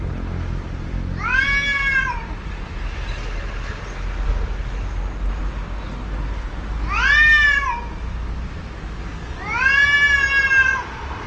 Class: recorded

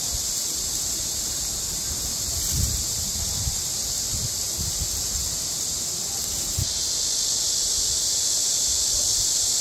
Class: recorded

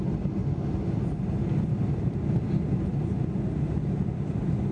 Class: recorded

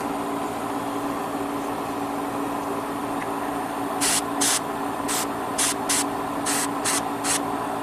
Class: recorded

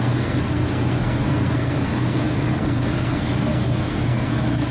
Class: remade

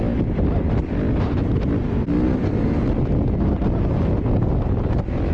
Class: recorded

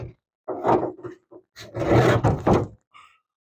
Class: recorded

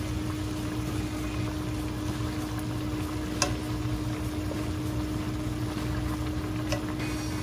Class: recorded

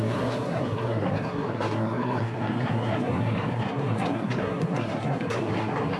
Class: remade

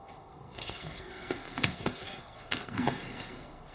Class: remade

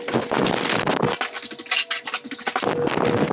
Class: recorded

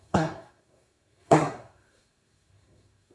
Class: remade